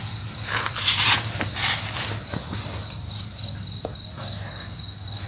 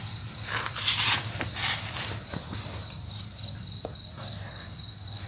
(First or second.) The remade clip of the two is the second